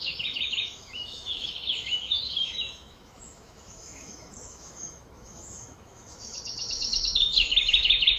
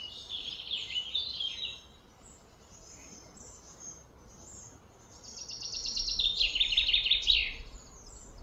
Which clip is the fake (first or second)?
first